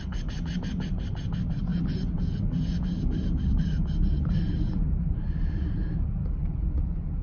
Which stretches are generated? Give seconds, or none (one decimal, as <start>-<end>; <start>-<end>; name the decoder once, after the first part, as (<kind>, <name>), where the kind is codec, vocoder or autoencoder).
none